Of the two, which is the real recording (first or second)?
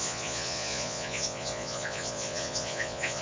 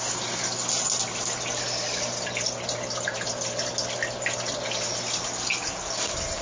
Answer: second